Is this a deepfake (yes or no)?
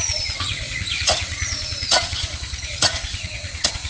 yes